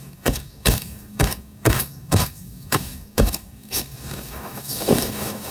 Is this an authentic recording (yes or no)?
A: no